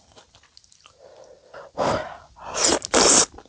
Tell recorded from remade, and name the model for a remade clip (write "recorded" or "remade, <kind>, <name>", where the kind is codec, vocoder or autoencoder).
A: recorded